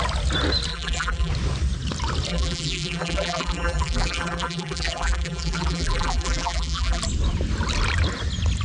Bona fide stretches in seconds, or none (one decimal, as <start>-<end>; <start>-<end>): 0.0-0.7; 1.3-2.3; 7.0-8.6